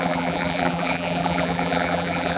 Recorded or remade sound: remade